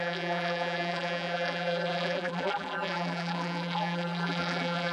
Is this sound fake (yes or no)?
yes